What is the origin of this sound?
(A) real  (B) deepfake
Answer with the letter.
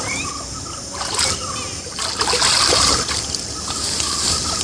A